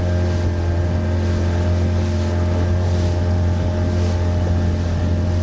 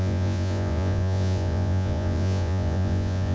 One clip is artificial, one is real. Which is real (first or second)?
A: first